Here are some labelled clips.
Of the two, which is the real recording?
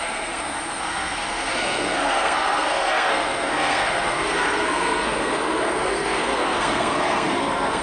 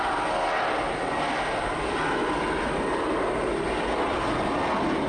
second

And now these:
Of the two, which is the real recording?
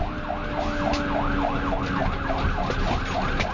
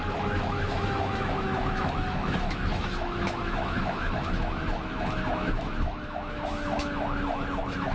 first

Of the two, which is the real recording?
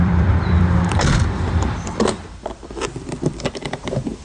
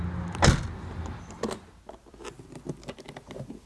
second